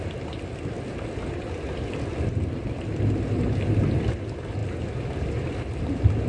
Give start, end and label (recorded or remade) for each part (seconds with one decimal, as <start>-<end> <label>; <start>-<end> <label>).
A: 0.0-6.3 recorded

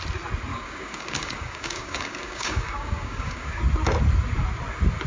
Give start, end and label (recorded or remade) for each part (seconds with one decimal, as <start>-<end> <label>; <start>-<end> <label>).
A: 0.0-0.5 recorded; 0.5-3.6 remade; 3.6-5.1 recorded

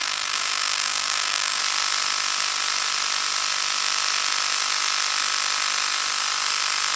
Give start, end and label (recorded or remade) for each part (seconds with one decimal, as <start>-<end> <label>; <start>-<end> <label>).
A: 0.0-1.6 remade; 1.6-7.0 recorded